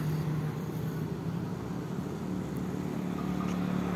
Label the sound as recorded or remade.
recorded